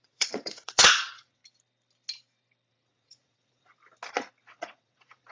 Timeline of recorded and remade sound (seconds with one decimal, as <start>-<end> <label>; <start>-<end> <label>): 0.0-1.4 remade; 1.4-2.7 recorded; 2.7-3.7 remade; 3.7-4.5 recorded; 4.5-5.3 remade